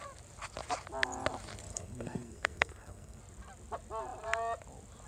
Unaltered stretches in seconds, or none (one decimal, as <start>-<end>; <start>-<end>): 0.0-1.7; 3.2-5.1